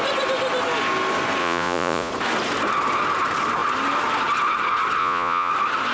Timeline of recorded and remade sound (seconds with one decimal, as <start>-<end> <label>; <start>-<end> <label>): 0.0-1.4 recorded; 1.4-2.1 remade; 2.1-5.0 recorded; 5.0-5.5 remade; 5.5-5.9 recorded